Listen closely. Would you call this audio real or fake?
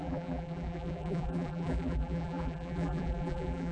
fake